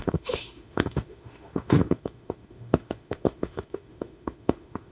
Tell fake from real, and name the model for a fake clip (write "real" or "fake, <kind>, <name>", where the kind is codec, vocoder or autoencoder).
fake, autoencoder, DAC-VAE